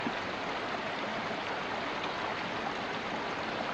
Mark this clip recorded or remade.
recorded